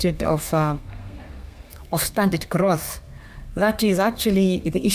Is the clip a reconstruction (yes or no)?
yes